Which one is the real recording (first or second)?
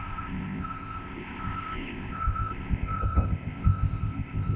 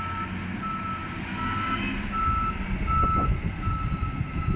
second